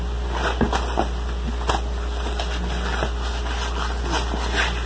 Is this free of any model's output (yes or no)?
yes